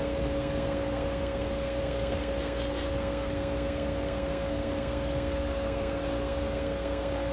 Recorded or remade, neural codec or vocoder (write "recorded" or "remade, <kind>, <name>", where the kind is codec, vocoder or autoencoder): remade, codec, SNAC